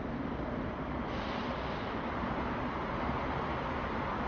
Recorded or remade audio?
recorded